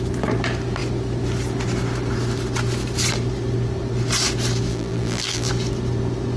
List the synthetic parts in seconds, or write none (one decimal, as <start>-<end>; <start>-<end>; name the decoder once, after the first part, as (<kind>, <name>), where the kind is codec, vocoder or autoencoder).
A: 4.7-5.5 (vocoder, BigVGAN v2)